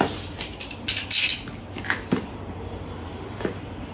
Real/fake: real